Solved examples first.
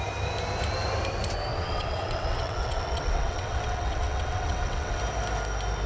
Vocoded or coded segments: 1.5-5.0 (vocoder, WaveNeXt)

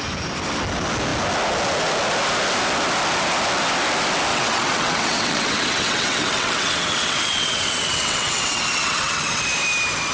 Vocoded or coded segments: 4.3-9.4 (vocoder, WaveNeXt)

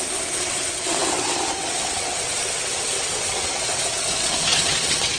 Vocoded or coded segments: 0.0-5.2 (vocoder, WaveNeXt)